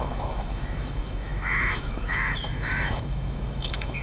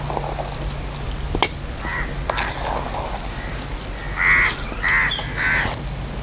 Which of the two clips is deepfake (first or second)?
first